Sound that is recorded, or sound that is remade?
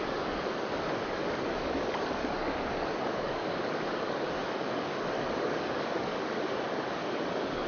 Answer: remade